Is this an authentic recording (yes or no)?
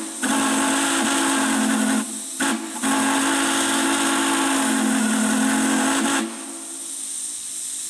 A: yes